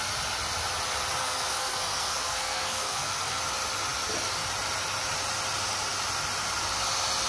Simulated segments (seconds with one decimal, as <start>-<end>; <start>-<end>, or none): 1.2-3.4